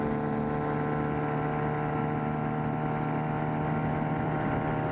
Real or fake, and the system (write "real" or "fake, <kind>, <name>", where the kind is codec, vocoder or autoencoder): real